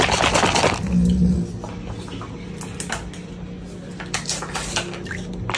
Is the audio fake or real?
real